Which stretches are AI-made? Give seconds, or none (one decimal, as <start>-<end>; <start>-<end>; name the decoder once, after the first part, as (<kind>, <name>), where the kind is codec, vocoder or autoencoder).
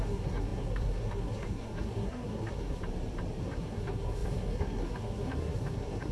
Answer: 0.0-2.8 (codec, SNAC); 3.4-6.1